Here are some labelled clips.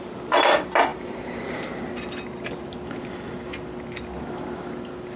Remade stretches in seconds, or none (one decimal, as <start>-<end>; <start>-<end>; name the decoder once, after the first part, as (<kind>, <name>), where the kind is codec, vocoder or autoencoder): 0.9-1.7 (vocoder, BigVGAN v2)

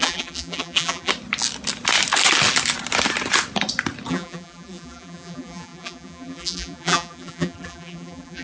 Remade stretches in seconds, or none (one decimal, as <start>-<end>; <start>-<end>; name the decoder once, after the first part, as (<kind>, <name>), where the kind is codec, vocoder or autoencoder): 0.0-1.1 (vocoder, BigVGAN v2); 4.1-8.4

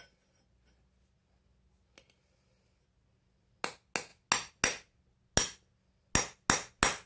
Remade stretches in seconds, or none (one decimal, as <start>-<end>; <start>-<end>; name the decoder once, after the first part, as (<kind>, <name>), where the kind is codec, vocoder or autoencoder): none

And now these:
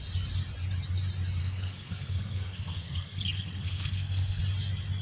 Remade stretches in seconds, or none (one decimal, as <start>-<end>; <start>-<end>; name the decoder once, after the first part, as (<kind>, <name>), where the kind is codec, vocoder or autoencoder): 1.4-4.4 (codec, SNAC)